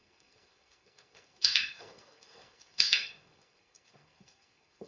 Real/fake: fake